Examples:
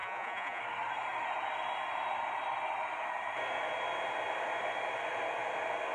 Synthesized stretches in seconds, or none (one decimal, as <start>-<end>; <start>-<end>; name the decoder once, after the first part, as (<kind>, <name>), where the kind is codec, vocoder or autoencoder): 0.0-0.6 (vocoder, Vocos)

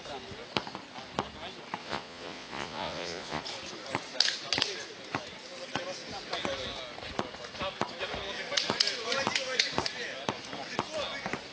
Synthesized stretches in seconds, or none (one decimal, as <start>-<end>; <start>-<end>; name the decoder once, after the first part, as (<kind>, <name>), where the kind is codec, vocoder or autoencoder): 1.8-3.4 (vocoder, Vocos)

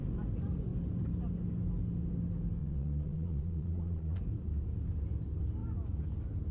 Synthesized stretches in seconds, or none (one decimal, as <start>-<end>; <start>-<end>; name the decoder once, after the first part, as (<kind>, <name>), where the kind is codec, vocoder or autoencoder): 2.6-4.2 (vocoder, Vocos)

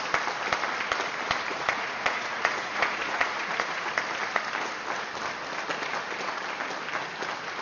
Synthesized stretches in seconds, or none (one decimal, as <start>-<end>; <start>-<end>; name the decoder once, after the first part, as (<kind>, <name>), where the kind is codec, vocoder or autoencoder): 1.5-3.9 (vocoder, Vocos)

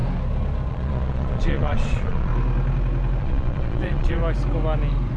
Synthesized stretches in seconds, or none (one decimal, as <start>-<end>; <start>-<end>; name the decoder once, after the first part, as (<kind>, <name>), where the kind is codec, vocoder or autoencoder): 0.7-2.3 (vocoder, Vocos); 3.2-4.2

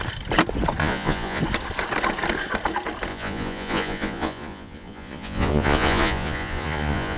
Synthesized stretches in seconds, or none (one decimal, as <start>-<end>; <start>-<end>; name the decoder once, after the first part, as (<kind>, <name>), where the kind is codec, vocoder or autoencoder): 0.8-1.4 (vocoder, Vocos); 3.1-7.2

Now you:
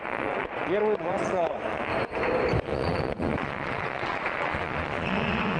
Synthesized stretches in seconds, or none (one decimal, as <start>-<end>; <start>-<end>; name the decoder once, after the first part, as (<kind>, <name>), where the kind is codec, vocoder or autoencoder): 0.0-1.9 (vocoder, Vocos); 2.6-5.6

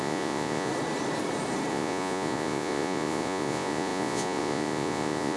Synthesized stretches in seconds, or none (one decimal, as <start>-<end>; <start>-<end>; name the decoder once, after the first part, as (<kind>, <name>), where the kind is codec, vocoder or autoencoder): 0.0-0.7 (vocoder, Vocos); 1.7-5.4